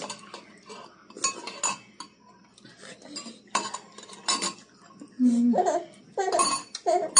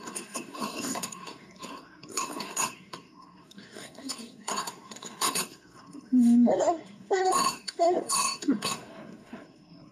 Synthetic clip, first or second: second